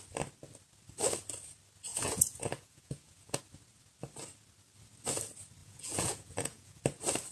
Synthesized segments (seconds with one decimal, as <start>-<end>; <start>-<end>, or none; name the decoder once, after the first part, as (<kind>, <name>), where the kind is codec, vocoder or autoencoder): 1.9-3.4 (vocoder, Vocos); 5.6-6.8